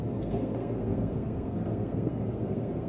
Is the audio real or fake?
fake